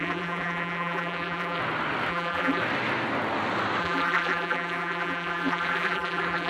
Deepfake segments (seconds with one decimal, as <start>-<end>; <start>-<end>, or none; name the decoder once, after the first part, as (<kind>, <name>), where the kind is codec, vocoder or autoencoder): 0.0-1.6 (vocoder, BigVGAN v2); 2.1-2.6; 3.8-6.5